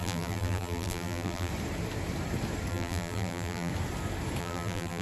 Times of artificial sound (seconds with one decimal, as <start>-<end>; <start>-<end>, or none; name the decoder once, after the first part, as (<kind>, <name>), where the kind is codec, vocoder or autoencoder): 0.0-1.5 (vocoder, BigVGAN v2); 2.7-3.7; 4.4-5.0